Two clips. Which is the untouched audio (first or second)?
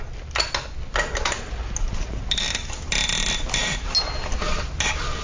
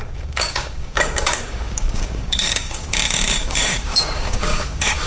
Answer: first